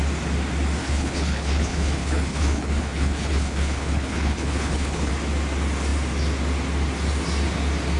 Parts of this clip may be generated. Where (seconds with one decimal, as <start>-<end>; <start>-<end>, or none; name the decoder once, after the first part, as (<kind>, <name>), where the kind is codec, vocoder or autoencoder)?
0.8-5.1 (codec, HILCodec)